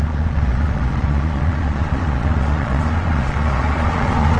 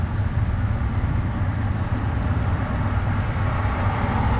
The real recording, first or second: second